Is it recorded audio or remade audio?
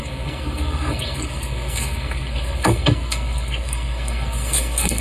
remade